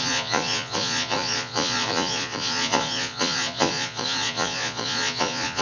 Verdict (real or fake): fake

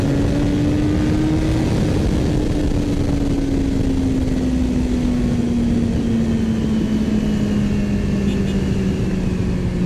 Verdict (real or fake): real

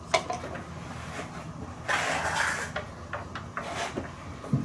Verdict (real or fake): real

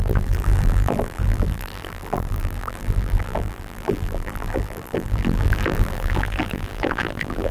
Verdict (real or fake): fake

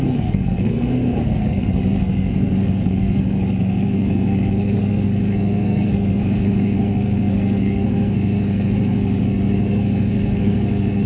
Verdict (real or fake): fake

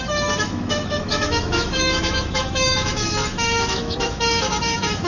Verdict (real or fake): fake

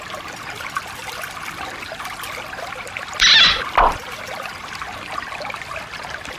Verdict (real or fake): real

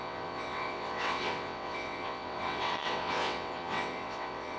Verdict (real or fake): fake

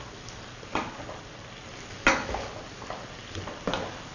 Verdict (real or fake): real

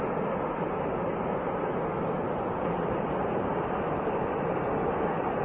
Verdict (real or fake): real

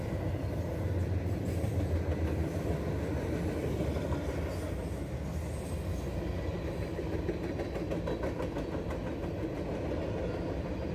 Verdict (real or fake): real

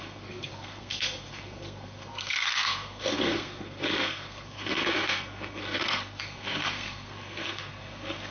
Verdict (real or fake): fake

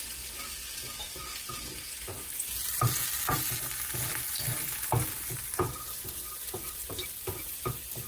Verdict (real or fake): real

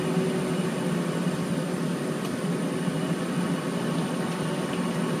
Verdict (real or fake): real